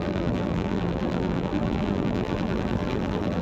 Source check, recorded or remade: remade